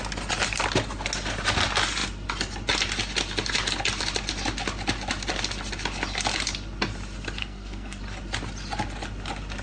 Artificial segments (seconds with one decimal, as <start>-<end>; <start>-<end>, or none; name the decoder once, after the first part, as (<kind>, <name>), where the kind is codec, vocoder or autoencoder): 7.4-8.0 (codec, SNAC)